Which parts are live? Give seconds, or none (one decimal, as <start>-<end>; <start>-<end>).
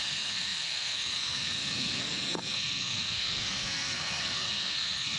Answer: none